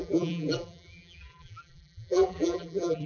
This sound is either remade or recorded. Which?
remade